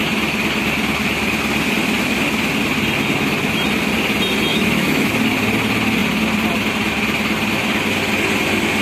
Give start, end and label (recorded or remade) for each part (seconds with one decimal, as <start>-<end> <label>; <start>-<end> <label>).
0.0-4.5 recorded; 4.5-5.1 remade; 5.1-8.8 recorded